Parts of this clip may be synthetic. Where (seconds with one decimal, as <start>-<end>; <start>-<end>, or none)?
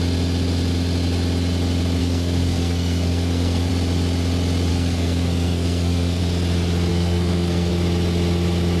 2.0-3.7; 4.7-6.2; 6.9-7.7